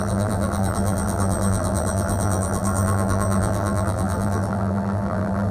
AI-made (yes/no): yes